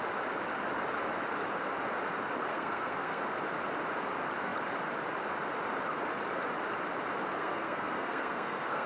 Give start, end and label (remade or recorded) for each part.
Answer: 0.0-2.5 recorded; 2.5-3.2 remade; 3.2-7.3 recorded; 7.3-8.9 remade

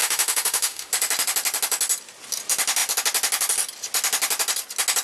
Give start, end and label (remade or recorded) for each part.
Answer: 0.0-0.9 remade; 0.9-5.0 recorded